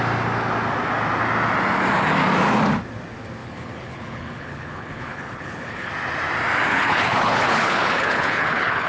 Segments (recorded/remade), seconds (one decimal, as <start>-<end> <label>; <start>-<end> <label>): 0.0-3.4 recorded; 3.4-5.9 remade; 5.9-6.7 recorded; 6.7-8.9 remade